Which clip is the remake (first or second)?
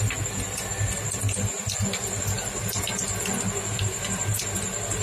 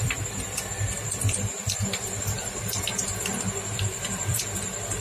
second